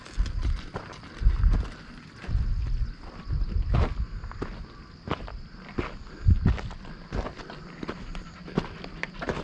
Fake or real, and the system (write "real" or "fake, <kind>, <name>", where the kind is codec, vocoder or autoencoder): real